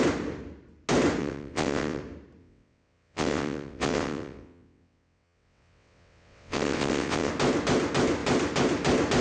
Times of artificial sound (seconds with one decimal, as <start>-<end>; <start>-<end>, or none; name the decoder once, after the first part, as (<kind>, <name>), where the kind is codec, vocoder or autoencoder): 1.2-2.0 (vocoder, WaveNeXt); 2.4-7.3